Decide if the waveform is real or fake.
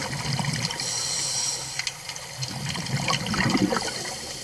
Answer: real